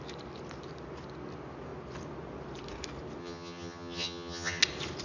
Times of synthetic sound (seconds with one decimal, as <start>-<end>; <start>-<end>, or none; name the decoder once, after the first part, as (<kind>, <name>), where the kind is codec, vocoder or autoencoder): 3.2-4.6 (vocoder, HiFi-GAN)